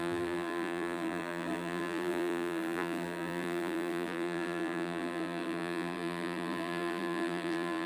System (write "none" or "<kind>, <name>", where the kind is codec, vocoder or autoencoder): vocoder, BigVGAN v2